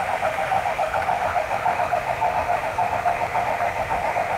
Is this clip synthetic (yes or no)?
yes